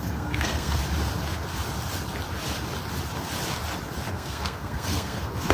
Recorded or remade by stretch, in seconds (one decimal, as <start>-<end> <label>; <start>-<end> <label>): 0.0-0.8 remade; 0.8-4.1 recorded; 4.1-5.5 remade